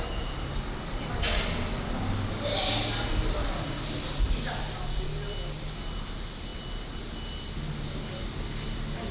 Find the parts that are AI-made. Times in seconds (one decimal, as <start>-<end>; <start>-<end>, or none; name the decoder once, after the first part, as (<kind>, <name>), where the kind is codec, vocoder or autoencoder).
none